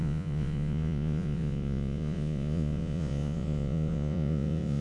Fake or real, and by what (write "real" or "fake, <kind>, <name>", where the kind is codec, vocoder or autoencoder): fake, vocoder, Vocos